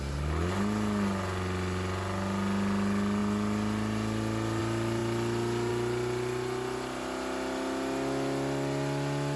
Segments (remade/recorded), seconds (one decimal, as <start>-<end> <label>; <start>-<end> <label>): 0.0-9.4 recorded